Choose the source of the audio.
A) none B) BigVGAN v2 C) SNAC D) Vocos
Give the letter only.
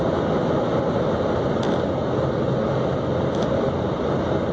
A